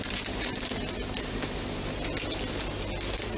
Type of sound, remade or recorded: recorded